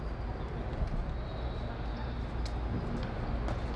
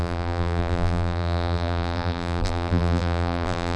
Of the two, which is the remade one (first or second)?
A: second